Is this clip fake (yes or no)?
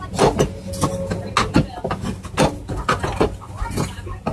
no